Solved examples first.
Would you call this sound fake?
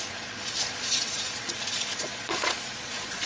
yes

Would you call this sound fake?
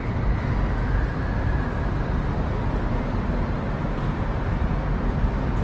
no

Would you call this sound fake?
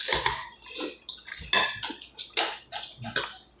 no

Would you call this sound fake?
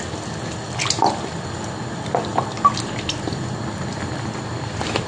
no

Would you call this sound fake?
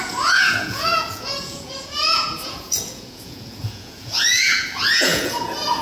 yes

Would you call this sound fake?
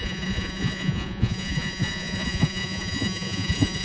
yes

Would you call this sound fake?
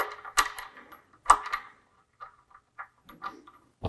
no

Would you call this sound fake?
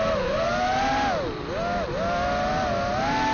no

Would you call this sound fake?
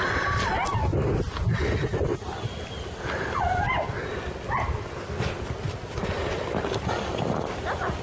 no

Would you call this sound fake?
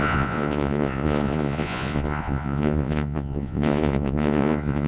yes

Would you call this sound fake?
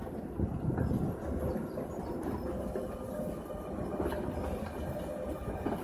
no